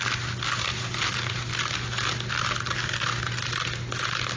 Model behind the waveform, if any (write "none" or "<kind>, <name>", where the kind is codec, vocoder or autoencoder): none